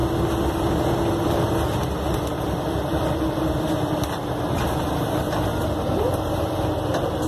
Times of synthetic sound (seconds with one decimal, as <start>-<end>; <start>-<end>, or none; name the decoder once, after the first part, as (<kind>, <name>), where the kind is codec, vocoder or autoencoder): none